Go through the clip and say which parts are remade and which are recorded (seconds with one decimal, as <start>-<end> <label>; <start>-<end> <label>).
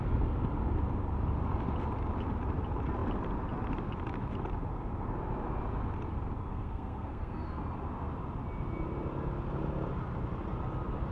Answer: 0.0-6.5 recorded; 6.5-7.6 remade; 7.6-11.1 recorded